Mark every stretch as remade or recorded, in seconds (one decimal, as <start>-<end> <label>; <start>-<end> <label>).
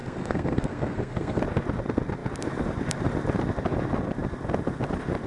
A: 0.0-1.4 remade; 1.4-5.3 recorded